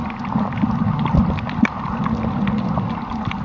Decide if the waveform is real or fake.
real